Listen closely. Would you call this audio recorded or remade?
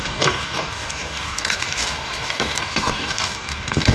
remade